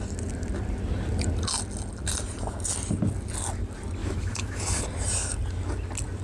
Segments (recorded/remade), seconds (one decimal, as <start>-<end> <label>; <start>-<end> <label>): 0.0-4.0 recorded; 4.0-4.6 remade; 4.6-6.2 recorded

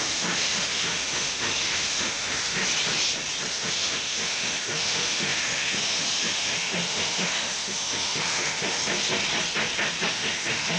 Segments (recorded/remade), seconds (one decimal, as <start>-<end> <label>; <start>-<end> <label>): 0.0-2.6 remade; 2.6-3.5 recorded; 3.5-8.8 remade; 8.8-10.1 recorded; 10.1-10.8 remade

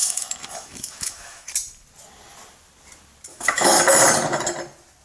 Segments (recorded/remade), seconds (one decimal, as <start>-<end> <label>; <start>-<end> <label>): 0.0-1.5 remade; 1.5-3.3 recorded; 3.3-3.8 remade; 3.8-5.0 recorded

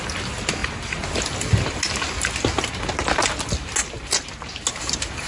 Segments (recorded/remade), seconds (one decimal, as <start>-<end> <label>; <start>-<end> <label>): 0.0-5.3 recorded